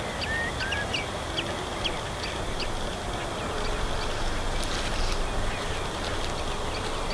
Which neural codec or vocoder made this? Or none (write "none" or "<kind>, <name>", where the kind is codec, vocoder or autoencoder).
none